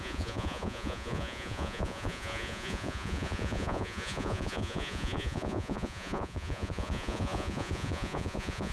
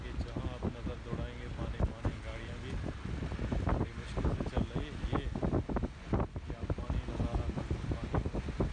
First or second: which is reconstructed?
first